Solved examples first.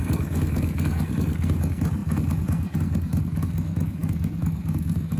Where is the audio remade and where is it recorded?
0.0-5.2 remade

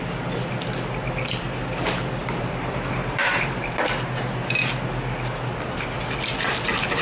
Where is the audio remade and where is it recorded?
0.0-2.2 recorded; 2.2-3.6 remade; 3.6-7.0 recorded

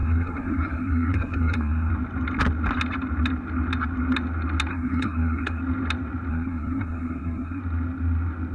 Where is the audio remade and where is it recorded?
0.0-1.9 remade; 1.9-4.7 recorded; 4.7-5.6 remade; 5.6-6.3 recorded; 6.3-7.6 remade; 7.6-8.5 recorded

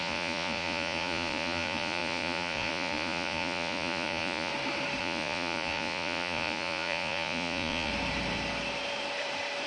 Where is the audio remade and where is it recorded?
0.0-4.5 remade; 4.5-5.0 recorded; 5.0-7.9 remade; 7.9-9.7 recorded